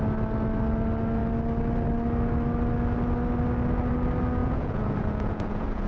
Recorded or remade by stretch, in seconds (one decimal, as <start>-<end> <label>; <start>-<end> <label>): 0.0-4.4 recorded; 4.4-5.9 remade

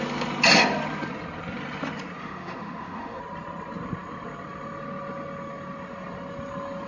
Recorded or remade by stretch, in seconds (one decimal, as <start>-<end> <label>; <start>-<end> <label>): 0.0-2.2 recorded; 2.2-3.2 remade; 3.2-6.9 recorded